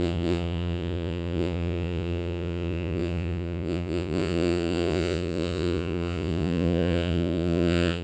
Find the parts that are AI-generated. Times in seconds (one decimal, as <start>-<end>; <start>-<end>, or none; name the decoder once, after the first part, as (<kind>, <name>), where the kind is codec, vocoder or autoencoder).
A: 0.0-8.0 (vocoder, Vocos)